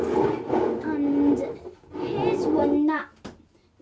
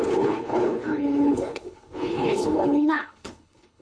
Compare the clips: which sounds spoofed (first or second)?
second